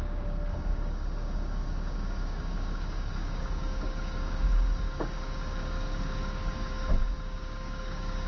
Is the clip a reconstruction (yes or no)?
yes